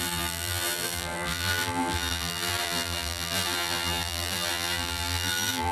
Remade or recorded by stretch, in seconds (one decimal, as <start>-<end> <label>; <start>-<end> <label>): 0.0-5.7 remade